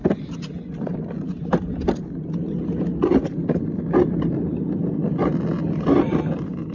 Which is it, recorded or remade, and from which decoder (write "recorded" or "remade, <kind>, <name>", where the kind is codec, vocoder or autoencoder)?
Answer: recorded